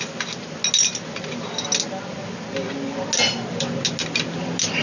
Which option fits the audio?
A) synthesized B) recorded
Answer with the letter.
B